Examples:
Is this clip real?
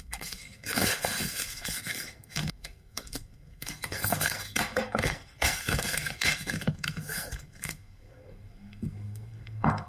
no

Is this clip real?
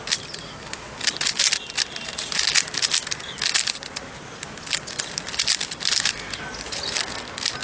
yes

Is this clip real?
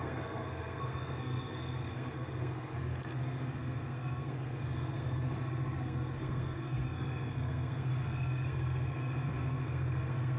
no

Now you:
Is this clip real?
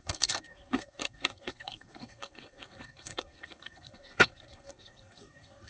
no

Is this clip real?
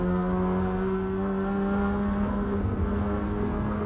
no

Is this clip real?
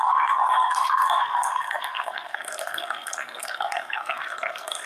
no